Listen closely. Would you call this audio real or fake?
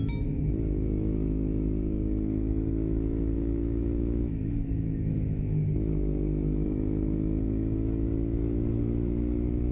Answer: fake